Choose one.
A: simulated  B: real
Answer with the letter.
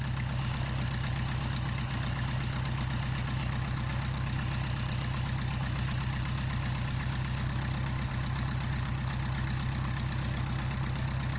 B